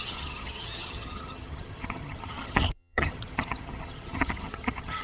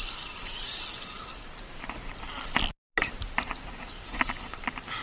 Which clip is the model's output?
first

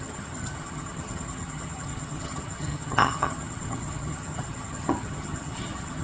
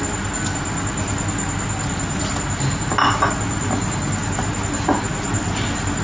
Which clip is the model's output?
first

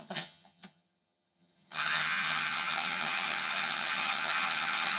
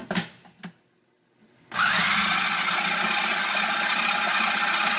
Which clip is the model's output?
first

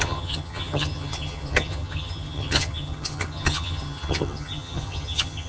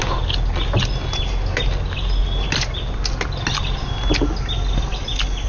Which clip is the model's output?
first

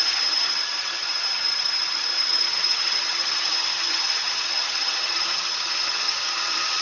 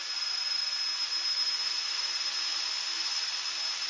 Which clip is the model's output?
first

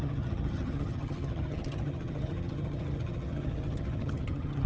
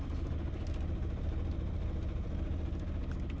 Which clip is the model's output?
first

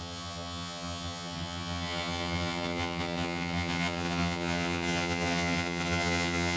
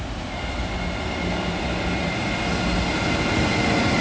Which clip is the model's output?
first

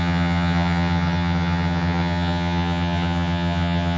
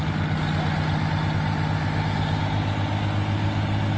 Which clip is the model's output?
first